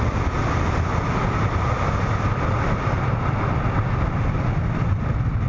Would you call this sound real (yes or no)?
yes